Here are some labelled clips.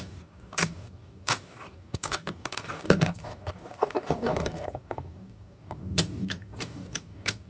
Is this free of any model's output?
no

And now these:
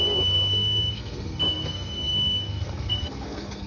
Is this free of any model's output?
no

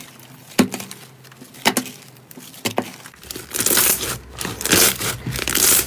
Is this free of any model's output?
yes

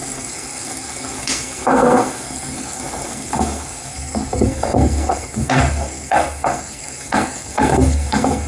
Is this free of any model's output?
no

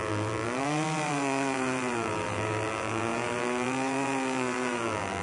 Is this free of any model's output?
no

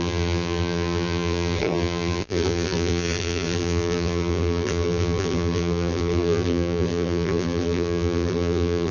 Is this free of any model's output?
no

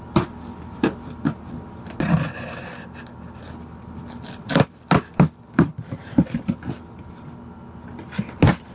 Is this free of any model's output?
yes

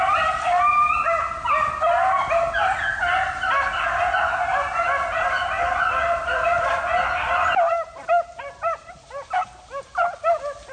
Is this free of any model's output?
yes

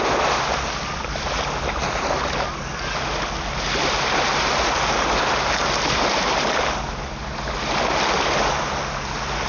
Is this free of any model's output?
yes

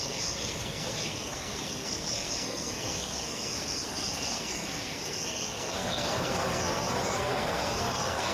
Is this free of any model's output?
no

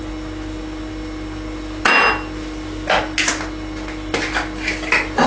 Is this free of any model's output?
yes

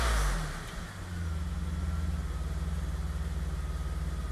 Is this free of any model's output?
yes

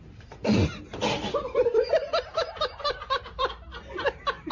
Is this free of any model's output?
no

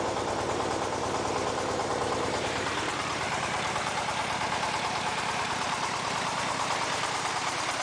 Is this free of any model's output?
no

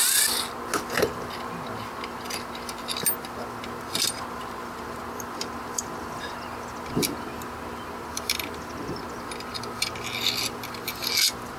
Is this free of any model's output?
yes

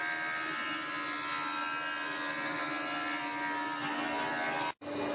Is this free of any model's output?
yes